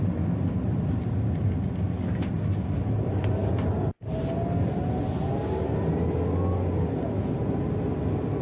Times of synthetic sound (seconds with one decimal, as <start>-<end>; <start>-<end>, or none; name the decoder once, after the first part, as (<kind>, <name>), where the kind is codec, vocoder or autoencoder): none